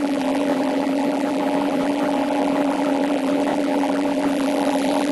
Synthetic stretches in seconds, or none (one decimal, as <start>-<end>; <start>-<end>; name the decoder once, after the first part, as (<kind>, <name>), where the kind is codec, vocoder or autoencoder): 0.0-5.1 (vocoder, BigVGAN v2)